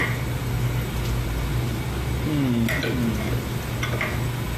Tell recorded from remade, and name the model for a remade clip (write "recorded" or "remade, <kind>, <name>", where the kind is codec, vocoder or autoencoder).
recorded